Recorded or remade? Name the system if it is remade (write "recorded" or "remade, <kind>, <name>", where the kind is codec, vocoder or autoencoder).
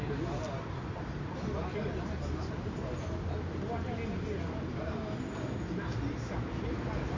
recorded